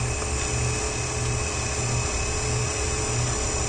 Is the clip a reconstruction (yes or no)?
no